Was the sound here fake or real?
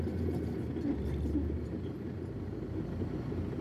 real